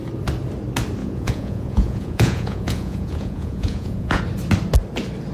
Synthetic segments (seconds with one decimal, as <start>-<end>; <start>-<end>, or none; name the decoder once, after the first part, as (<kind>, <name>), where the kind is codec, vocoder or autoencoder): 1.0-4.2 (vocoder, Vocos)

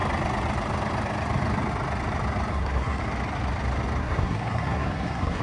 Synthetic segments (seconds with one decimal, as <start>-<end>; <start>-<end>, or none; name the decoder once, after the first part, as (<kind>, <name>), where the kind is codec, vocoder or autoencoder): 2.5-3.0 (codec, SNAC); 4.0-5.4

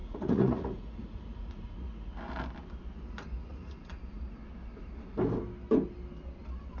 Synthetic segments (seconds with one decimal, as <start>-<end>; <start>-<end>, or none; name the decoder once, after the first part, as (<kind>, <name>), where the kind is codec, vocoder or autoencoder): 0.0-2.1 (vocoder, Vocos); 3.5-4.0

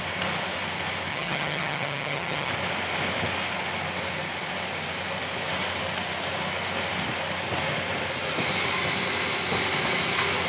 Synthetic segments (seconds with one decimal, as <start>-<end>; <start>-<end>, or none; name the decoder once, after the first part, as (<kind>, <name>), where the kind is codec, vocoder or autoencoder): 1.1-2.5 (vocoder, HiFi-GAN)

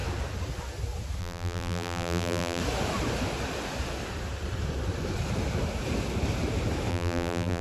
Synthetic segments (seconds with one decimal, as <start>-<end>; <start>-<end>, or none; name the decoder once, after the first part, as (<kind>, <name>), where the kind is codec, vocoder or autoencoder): 1.2-2.6 (vocoder, BigVGAN v2); 6.9-7.6

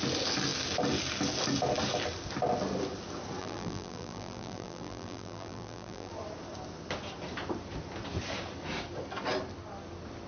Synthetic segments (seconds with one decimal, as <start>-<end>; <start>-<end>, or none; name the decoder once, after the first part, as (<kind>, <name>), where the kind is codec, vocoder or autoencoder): 3.4-6.1 (vocoder, BigVGAN v2)